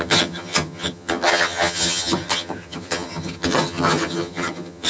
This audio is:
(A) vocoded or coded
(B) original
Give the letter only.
A